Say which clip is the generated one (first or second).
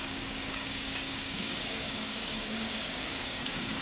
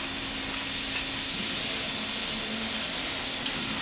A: first